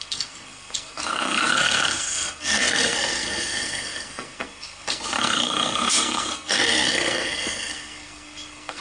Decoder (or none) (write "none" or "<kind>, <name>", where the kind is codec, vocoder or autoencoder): codec, SNAC